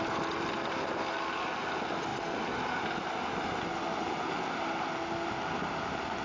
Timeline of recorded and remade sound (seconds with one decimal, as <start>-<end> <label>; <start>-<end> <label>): 0.0-6.2 recorded